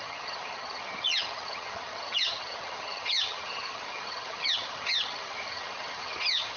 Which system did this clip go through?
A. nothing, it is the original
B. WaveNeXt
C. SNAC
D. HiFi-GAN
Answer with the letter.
D